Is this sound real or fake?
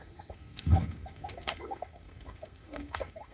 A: fake